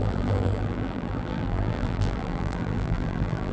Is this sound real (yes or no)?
no